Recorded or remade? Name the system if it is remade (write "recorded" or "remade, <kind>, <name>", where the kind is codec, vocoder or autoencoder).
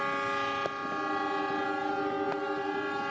recorded